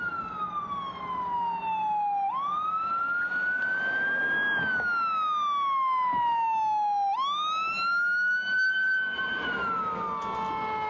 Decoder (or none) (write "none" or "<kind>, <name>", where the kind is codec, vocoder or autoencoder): none